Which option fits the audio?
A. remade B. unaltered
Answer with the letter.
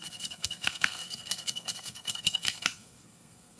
A